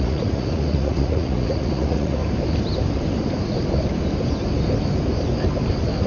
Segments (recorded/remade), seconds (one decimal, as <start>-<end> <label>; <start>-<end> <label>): 0.0-2.2 remade; 2.2-6.1 recorded